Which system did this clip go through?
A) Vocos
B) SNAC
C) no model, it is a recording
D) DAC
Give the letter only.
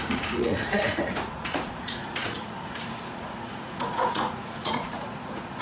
A